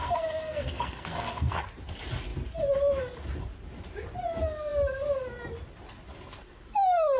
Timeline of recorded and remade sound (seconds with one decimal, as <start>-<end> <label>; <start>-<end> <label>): 0.0-1.6 remade; 1.6-7.2 recorded